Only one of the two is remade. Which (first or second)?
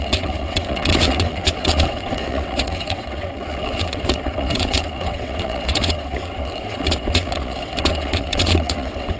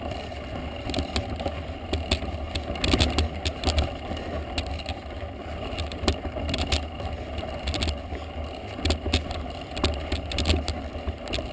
first